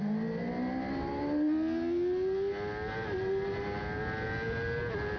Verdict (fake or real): real